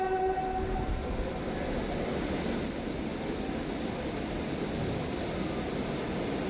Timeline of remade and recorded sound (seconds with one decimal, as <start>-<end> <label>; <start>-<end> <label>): 0.0-6.5 recorded